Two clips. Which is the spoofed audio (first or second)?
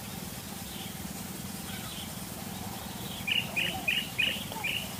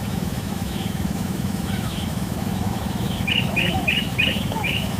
second